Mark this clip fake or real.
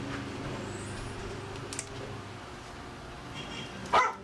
real